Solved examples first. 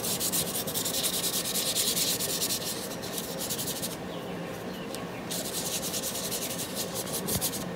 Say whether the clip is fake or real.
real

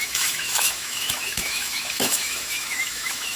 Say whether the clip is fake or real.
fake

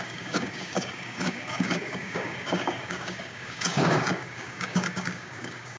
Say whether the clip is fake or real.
fake